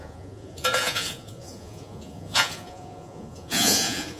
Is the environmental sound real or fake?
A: fake